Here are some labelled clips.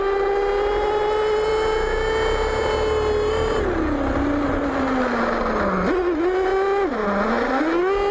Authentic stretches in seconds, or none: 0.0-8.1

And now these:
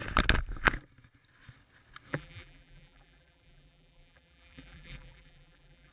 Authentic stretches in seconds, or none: 0.0-2.1

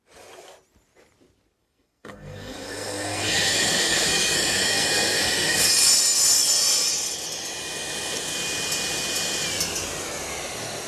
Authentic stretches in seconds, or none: 0.0-1.6; 5.7-10.9

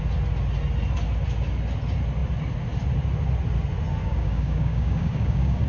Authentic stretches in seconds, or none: 0.0-4.0

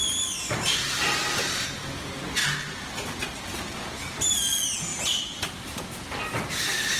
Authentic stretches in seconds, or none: 0.0-2.4; 3.2-4.9; 5.8-7.0

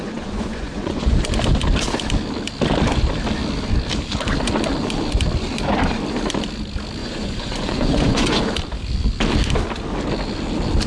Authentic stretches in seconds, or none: 1.2-7.0; 8.4-10.9

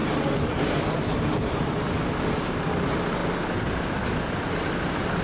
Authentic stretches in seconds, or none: 0.0-5.2